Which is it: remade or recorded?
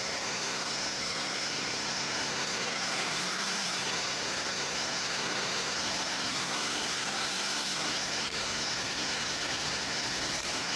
remade